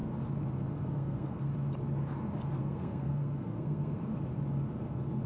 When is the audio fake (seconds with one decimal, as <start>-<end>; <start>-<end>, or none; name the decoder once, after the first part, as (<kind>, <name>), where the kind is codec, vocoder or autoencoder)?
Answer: 0.8-1.5 (codec, SNAC); 2.6-4.1